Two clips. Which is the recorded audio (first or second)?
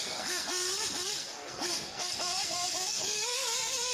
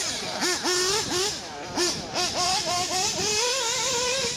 second